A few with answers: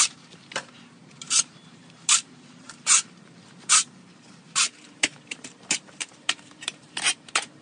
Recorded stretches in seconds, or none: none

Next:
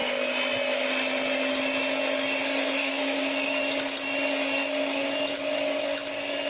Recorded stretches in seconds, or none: 0.0-2.8; 3.6-6.5

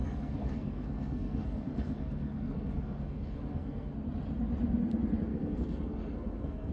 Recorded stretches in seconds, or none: 3.9-5.3

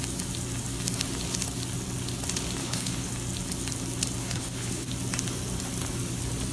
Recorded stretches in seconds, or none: 0.0-2.6; 3.1-4.2; 4.9-6.5

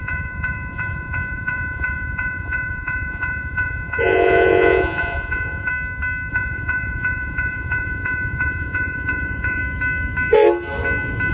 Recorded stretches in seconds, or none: 5.7-6.3; 9.6-11.3

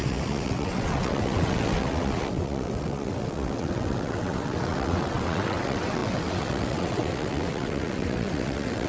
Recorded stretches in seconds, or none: none

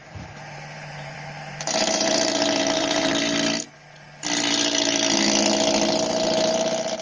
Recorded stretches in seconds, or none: 3.1-7.0

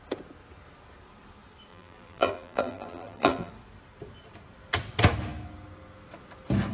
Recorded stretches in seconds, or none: 0.0-1.7; 3.5-6.7